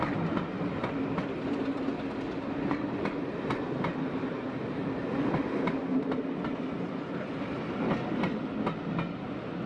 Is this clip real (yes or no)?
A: yes